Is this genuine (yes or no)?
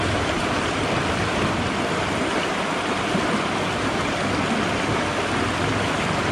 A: yes